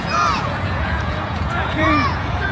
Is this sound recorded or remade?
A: remade